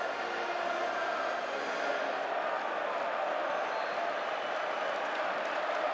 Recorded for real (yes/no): yes